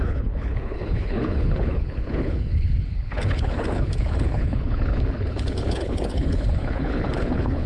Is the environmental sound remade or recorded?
remade